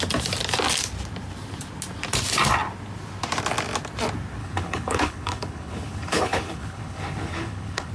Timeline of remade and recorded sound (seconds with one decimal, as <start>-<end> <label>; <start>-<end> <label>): 0.0-4.4 recorded; 4.4-7.9 remade